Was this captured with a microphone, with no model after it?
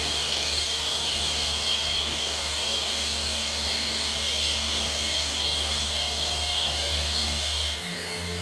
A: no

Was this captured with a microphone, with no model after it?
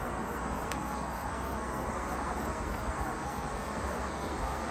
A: no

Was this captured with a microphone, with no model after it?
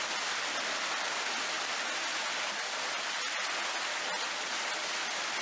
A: yes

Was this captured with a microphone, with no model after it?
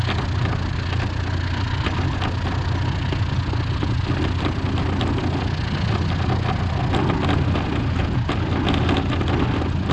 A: yes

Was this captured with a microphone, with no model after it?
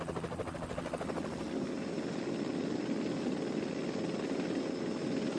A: yes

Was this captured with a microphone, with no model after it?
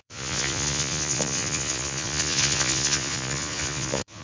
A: no